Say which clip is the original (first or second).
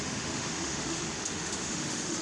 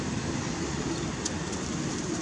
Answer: second